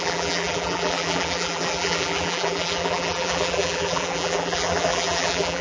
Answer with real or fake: fake